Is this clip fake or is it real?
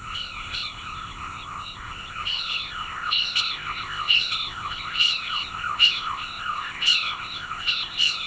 fake